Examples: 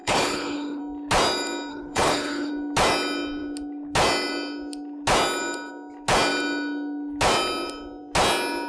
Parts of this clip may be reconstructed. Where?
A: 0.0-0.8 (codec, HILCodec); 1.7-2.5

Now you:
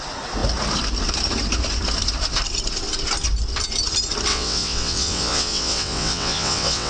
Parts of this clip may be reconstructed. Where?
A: 4.3-6.9 (vocoder, WaveNeXt)

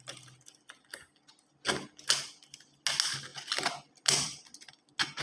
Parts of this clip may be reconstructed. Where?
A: none

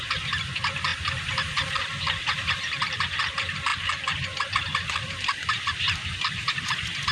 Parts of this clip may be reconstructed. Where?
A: none

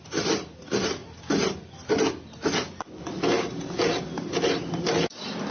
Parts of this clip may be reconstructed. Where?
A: none

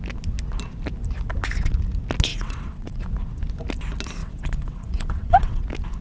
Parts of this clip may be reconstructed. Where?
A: 2.3-3.0 (vocoder, WaveNeXt); 4.2-5.6

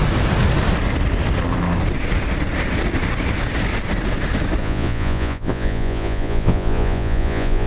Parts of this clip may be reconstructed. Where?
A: 4.6-7.7 (vocoder, Vocos)

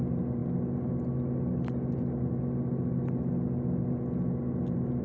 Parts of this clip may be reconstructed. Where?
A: none